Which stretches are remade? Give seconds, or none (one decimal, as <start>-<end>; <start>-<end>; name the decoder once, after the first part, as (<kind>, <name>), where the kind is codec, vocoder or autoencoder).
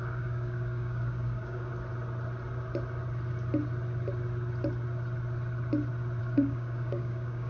0.0-1.7 (codec, DAC); 6.2-7.5